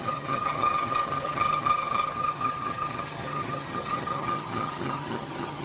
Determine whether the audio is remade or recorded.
remade